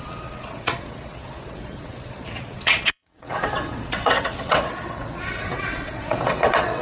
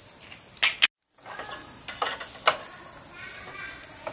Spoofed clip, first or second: first